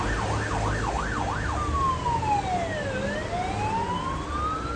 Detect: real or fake real